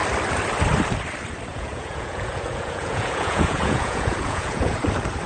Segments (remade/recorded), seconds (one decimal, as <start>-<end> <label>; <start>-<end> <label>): 0.0-1.5 recorded; 1.5-4.7 remade; 4.7-5.3 recorded